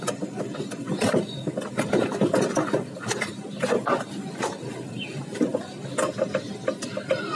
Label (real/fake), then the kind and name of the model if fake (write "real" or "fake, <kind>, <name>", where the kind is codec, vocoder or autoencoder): real